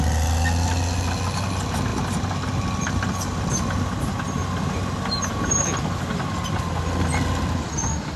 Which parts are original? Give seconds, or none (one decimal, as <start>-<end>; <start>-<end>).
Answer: 0.0-8.2